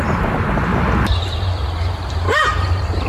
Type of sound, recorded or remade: remade